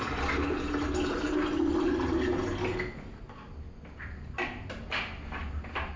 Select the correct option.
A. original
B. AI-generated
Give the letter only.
A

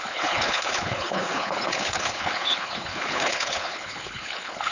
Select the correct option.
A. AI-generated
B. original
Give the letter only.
A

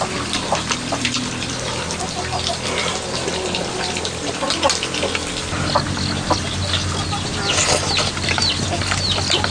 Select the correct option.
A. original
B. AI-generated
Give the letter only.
A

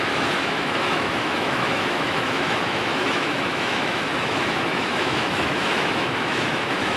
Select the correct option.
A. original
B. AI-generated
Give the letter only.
B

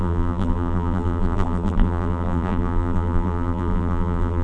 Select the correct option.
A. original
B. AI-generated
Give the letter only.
B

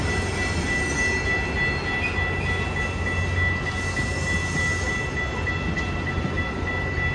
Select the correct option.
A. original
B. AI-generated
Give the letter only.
A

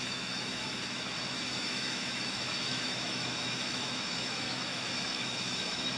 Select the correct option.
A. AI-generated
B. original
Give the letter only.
A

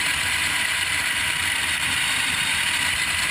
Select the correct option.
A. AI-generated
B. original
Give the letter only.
A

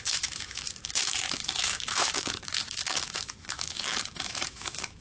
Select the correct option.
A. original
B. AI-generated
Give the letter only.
B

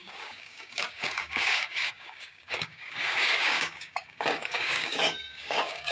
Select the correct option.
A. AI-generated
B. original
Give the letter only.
A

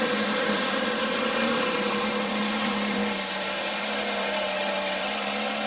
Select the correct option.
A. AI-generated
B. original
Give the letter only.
A